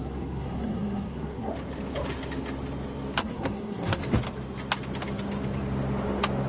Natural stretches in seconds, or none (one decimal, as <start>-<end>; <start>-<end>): 1.5-3.2; 4.0-6.5